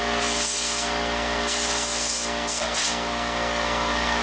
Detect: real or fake fake